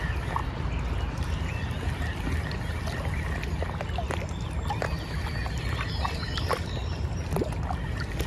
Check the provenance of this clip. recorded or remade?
recorded